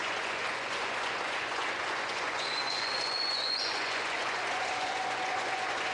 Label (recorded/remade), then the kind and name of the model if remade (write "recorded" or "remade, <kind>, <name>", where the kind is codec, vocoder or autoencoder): remade, vocoder, Vocos